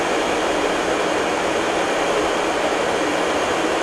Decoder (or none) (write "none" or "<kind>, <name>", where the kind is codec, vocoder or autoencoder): none